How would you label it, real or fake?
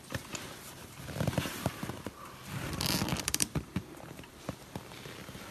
fake